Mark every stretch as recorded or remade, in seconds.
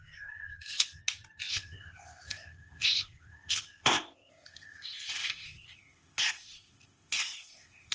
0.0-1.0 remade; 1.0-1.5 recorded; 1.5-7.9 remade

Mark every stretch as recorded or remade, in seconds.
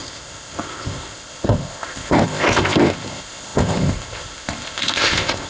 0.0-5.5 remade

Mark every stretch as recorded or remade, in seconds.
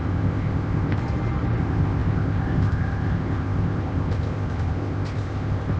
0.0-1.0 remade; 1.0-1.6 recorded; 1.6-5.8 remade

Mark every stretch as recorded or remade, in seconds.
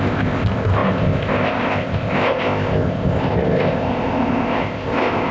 0.0-5.3 remade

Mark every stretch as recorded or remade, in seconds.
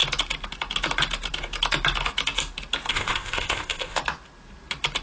0.0-2.9 recorded; 2.9-4.0 remade; 4.0-5.0 recorded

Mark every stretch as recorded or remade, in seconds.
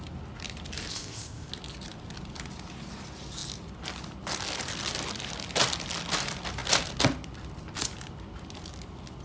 0.0-0.9 recorded; 0.9-1.5 remade; 1.5-9.2 recorded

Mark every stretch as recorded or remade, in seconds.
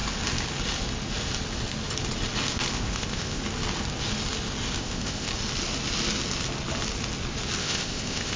0.0-2.7 recorded; 2.7-3.4 remade; 3.4-4.8 recorded; 4.8-5.3 remade; 5.3-7.6 recorded; 7.6-8.4 remade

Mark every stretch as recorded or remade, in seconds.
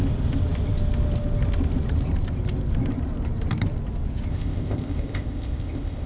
0.0-4.3 recorded; 4.3-6.1 remade